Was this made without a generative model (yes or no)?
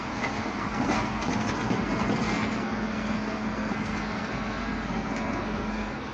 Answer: no